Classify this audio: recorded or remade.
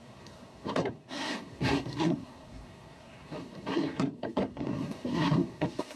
remade